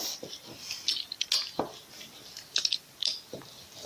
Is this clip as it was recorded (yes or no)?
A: yes